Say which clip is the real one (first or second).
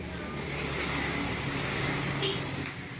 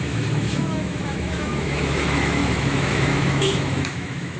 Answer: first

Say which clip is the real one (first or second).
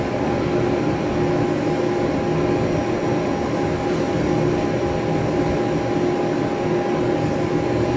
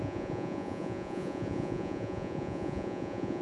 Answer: first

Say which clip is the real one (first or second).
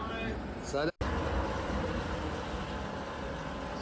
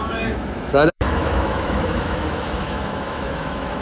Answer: first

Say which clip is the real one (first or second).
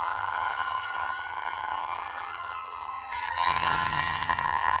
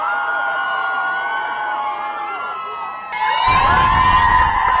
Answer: second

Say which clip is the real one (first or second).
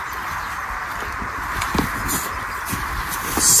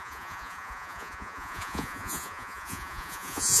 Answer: first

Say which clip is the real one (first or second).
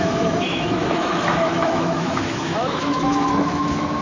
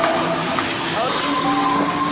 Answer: second